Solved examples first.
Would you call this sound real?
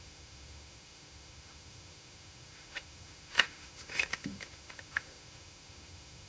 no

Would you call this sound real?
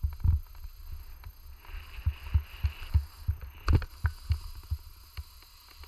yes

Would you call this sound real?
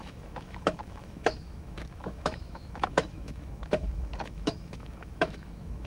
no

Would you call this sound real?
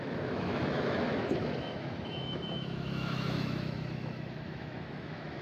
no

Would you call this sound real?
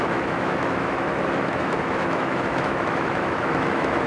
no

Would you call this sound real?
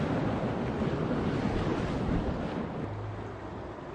yes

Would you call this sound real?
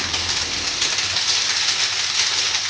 yes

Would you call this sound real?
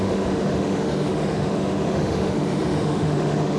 no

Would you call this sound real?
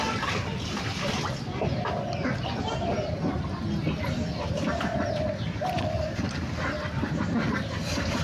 yes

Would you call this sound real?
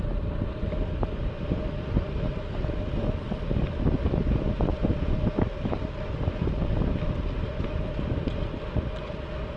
yes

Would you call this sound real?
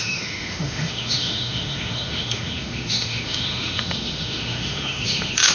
no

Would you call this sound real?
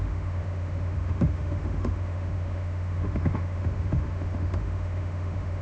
no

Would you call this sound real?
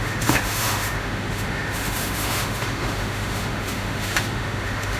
no